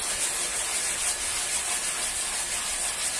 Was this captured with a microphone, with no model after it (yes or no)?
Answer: yes